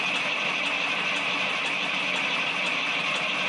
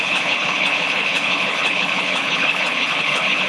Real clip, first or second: first